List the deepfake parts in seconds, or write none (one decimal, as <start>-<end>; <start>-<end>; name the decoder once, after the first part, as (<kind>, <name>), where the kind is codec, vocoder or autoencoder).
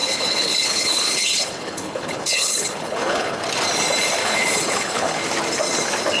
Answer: 0.0-3.4 (codec, HILCodec); 4.2-5.2